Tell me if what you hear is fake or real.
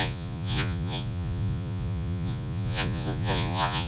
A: fake